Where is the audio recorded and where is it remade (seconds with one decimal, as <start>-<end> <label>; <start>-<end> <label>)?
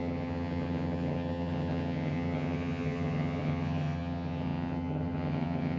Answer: 0.0-5.8 remade